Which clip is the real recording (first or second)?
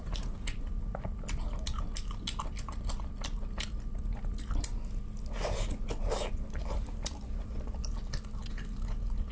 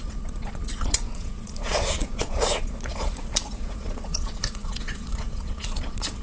first